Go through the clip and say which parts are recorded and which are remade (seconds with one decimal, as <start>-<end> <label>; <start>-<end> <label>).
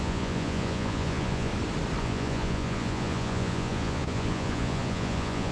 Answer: 0.0-1.5 remade; 1.5-2.0 recorded; 2.0-5.5 remade